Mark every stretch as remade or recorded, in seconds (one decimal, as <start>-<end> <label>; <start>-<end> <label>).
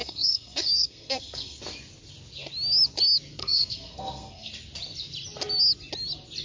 0.0-1.6 remade; 1.6-3.4 recorded; 3.4-4.5 remade; 4.5-6.4 recorded